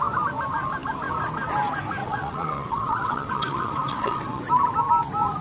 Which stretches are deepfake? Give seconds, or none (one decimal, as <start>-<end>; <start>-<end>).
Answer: 2.0-4.4